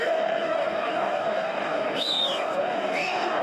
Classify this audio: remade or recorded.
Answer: remade